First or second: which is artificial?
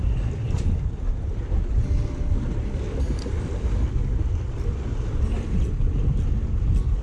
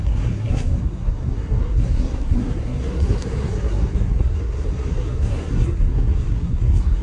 second